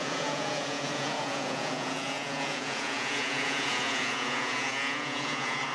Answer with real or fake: fake